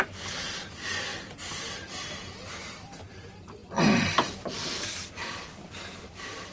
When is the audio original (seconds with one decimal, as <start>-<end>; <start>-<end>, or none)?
1.1-3.0